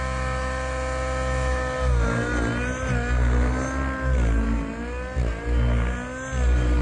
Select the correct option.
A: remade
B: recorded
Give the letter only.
B